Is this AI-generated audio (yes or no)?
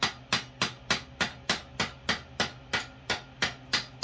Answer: no